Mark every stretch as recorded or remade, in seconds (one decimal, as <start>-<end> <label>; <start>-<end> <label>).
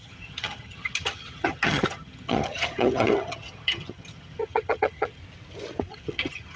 0.0-5.2 remade; 5.2-5.9 recorded; 5.9-6.6 remade